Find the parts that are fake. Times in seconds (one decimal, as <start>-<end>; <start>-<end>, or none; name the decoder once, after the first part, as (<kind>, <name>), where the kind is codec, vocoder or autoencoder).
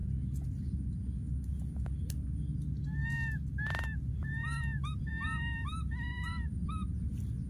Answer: none